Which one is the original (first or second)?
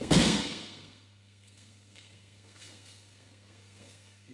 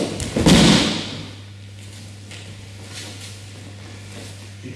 second